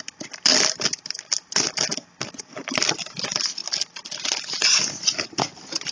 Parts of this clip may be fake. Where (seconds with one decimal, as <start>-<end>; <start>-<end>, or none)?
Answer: none